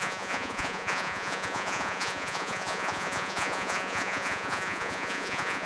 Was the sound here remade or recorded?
remade